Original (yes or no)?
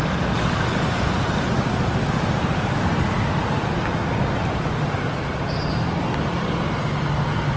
yes